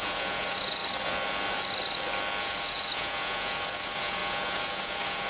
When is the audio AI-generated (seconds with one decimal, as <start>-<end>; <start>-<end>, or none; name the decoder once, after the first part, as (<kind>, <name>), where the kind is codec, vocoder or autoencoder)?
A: 0.0-0.8 (vocoder, Vocos); 2.4-5.3